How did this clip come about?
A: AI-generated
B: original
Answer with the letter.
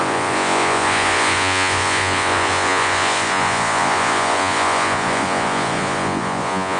A